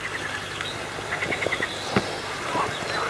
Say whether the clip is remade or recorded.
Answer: recorded